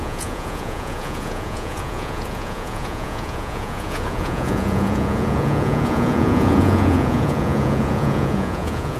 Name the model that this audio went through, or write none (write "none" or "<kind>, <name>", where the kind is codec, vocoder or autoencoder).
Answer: vocoder, Vocos